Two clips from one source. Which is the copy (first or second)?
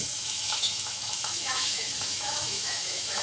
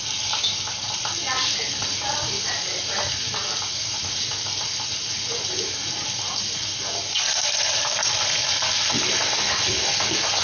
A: first